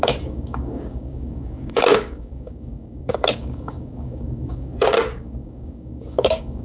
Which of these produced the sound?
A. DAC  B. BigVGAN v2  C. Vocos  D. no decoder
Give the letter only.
A